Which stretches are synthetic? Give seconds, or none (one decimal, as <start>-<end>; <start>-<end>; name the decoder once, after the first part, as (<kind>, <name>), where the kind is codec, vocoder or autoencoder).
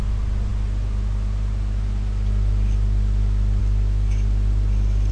none